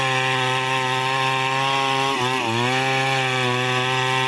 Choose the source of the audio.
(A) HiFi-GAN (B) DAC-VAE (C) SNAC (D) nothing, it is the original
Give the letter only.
D